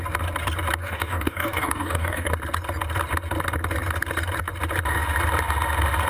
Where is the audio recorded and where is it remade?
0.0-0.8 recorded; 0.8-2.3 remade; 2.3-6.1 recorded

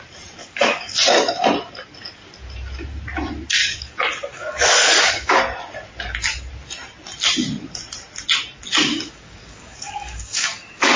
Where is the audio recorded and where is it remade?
0.0-0.4 recorded; 0.4-1.0 remade; 1.0-3.6 recorded; 3.6-5.4 remade; 5.4-8.9 recorded; 8.9-11.0 remade